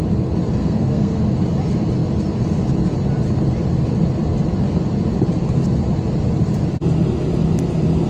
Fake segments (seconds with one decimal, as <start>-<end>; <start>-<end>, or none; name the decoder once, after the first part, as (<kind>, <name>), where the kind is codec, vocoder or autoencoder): 0.6-1.2 (codec, SNAC)